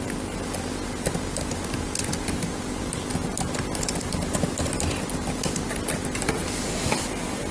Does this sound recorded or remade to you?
recorded